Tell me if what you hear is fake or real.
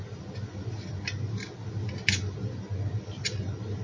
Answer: real